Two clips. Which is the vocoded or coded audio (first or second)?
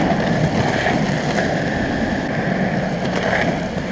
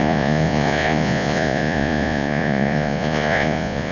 second